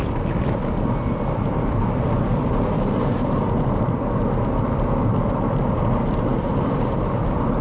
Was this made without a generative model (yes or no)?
yes